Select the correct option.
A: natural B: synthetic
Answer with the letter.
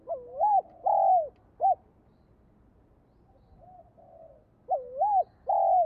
A